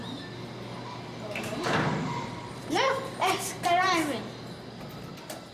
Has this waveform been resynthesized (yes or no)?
no